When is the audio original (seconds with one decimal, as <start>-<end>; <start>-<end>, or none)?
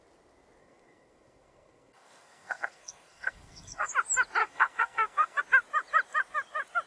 0.0-0.6; 3.9-4.4; 5.4-6.9